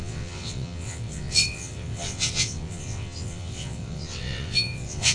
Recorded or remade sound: remade